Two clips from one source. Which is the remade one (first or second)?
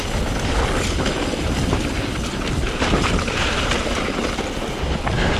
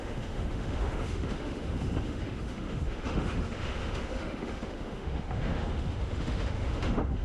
second